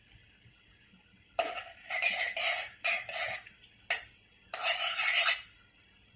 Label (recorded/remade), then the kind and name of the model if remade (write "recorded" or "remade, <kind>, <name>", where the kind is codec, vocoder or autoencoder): recorded